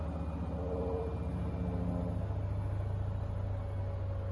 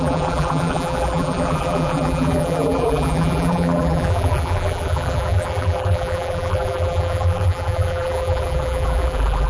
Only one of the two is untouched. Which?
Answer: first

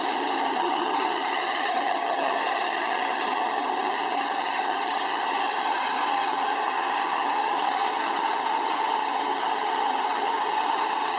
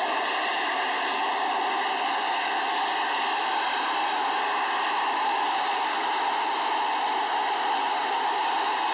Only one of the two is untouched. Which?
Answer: second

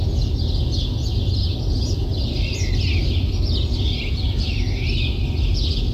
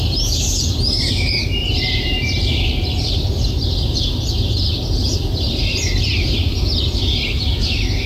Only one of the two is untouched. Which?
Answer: first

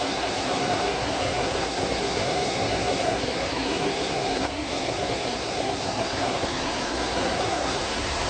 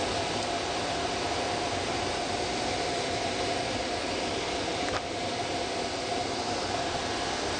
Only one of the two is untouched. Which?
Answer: second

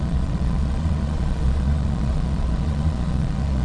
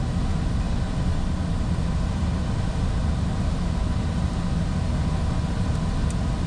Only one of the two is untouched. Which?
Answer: second